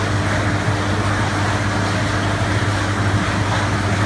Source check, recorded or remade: recorded